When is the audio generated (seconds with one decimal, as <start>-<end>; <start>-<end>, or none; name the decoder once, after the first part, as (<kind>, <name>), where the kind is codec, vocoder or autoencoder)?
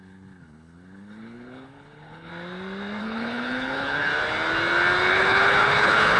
0.0-2.3 (codec, HILCodec); 3.0-4.1; 5.1-6.2